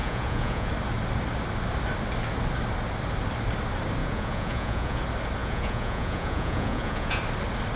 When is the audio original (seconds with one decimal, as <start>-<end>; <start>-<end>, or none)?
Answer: 0.7-4.0; 5.0-5.4; 7.2-7.8